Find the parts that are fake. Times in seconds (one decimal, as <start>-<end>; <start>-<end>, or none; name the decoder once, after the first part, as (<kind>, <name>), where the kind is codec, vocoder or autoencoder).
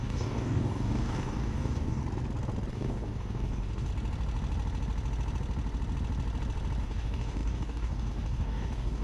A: 0.0-2.0 (codec, DAC); 2.7-3.9; 6.8-9.0